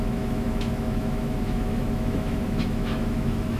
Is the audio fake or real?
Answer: fake